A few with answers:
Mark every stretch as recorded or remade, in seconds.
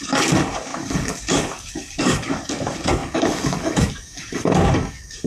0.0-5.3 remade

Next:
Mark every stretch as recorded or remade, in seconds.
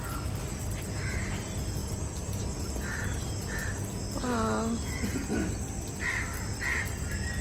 0.0-7.4 recorded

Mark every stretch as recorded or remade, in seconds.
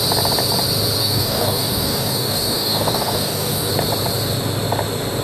0.0-1.0 recorded; 1.0-3.7 remade; 3.7-5.2 recorded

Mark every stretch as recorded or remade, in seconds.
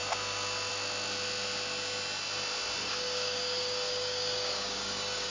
0.0-2.8 recorded; 2.8-5.3 remade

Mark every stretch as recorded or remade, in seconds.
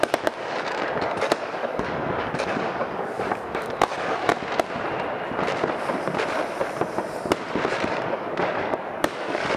0.0-4.3 remade; 4.3-7.7 recorded; 7.7-9.6 remade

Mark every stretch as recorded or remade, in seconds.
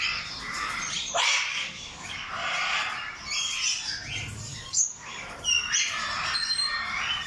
0.0-1.5 recorded; 1.5-2.2 remade; 2.2-4.5 recorded; 4.5-5.4 remade; 5.4-7.3 recorded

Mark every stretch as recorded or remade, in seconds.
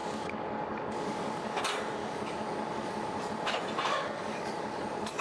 0.0-1.6 remade; 1.6-2.0 recorded; 2.0-3.2 remade; 3.2-3.9 recorded; 3.9-5.2 remade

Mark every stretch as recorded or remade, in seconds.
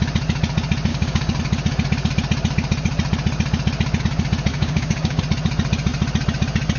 0.0-0.9 recorded; 0.9-1.4 remade; 1.4-4.5 recorded; 4.5-5.2 remade; 5.2-6.8 recorded